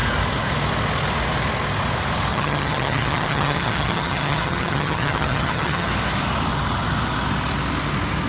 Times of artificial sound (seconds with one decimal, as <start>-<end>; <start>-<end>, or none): 2.3-5.9